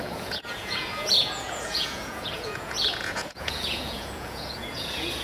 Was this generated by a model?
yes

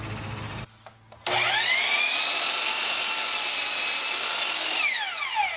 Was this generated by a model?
no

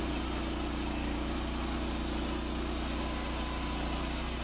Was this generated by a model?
no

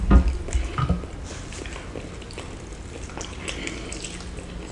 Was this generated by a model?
no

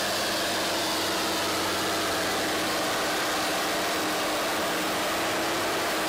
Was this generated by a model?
no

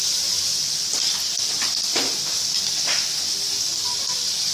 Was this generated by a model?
no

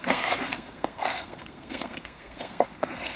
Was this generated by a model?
yes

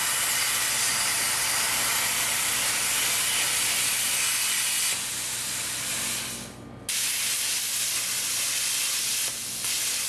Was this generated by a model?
no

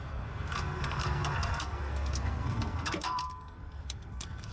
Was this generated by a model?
yes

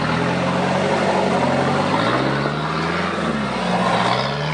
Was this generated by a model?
no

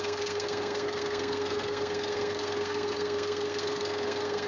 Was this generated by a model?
yes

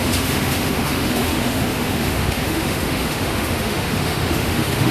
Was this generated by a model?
yes